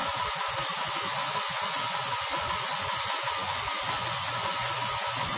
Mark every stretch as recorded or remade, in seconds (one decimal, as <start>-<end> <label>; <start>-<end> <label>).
0.0-0.8 recorded; 0.8-5.4 remade